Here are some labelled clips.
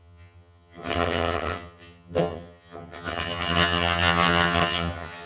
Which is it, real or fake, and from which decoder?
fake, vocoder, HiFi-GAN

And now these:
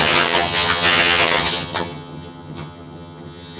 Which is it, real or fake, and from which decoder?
fake, vocoder, HiFi-GAN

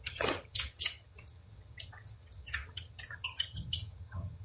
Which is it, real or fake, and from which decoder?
fake, vocoder, HiFi-GAN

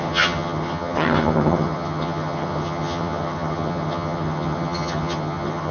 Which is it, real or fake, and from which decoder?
fake, vocoder, HiFi-GAN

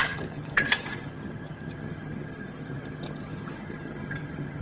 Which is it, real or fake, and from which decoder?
fake, vocoder, HiFi-GAN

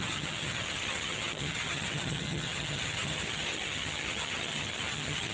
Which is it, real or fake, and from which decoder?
fake, vocoder, HiFi-GAN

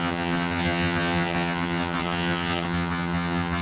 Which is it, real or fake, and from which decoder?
fake, vocoder, HiFi-GAN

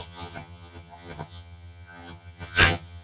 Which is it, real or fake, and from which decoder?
fake, vocoder, HiFi-GAN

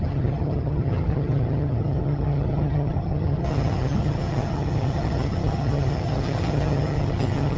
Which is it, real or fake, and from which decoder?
fake, vocoder, HiFi-GAN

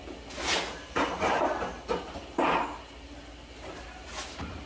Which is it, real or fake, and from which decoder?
real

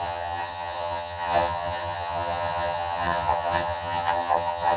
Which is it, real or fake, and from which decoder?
fake, vocoder, HiFi-GAN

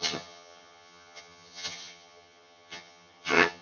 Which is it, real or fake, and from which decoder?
fake, vocoder, HiFi-GAN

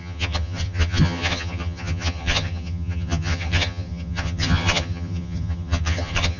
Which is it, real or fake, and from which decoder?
fake, vocoder, HiFi-GAN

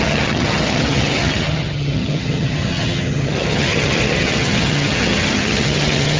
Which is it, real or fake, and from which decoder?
fake, vocoder, HiFi-GAN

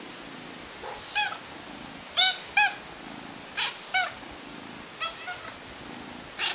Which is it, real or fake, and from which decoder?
real